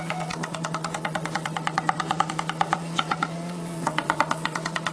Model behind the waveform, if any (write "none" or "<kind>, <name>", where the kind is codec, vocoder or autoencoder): vocoder, Vocos